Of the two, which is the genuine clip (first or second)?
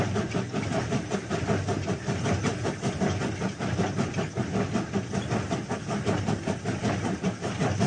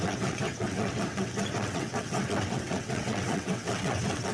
first